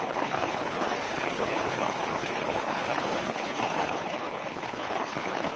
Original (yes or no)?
no